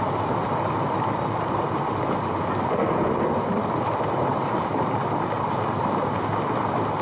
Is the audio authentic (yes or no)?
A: yes